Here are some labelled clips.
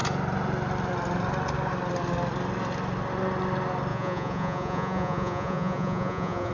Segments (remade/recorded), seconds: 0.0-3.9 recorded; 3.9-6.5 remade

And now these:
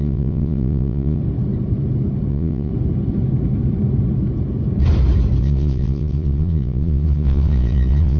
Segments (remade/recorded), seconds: 0.0-1.2 remade; 1.2-2.3 recorded; 2.3-2.7 remade; 2.7-5.4 recorded; 5.4-8.2 remade

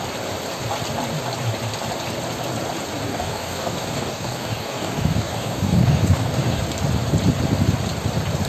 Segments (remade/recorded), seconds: 0.0-3.1 recorded; 3.1-6.6 remade; 6.6-8.5 recorded